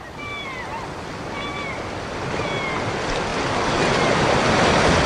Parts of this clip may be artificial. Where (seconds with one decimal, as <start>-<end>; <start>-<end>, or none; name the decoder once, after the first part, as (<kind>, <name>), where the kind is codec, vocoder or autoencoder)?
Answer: none